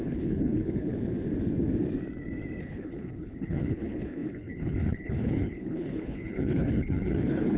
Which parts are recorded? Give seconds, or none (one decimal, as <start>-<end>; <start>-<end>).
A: 0.9-2.6